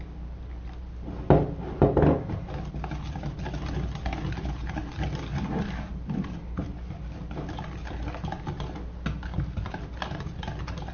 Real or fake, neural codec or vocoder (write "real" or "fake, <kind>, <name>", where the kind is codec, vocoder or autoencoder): real